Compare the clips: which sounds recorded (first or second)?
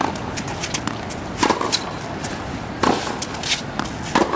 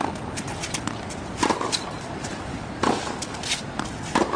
first